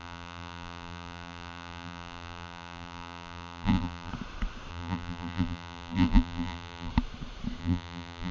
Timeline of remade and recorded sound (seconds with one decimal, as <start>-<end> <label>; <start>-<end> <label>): 0.0-4.1 remade; 4.1-4.7 recorded; 4.7-6.9 remade; 6.9-7.6 recorded; 7.6-8.3 remade